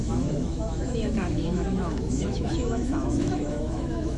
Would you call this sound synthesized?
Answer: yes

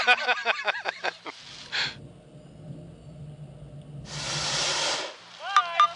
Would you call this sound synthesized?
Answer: no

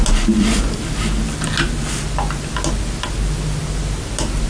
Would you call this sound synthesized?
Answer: no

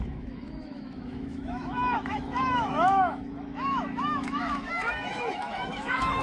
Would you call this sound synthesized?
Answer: yes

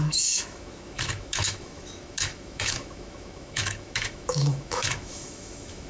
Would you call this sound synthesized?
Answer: yes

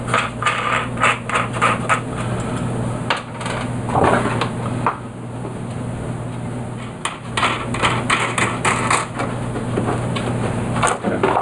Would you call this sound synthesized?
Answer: no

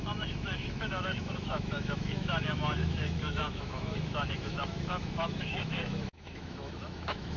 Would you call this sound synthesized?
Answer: yes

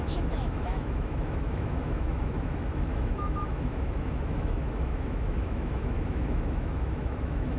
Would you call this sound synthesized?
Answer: yes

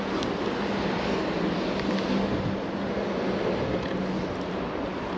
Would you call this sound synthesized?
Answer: no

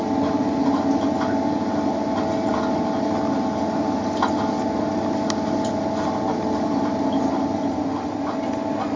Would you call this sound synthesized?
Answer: no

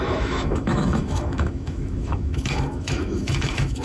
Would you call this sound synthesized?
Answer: yes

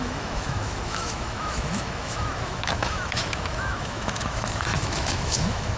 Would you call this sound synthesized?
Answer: yes